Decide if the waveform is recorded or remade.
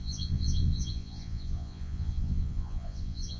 remade